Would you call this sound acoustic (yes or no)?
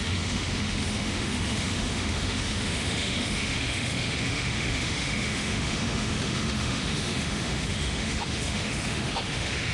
no